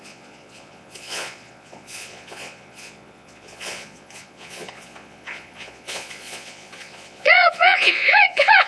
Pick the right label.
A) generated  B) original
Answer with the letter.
A